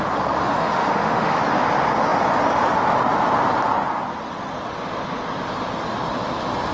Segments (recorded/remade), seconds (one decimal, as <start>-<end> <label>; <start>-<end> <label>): 0.0-0.6 recorded; 0.6-1.4 remade; 1.4-6.7 recorded